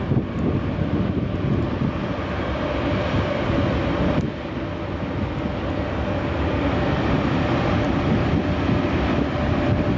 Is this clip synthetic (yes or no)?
no